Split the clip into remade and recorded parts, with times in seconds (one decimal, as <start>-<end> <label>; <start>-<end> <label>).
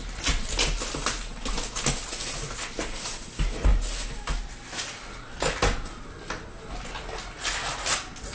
0.0-8.3 recorded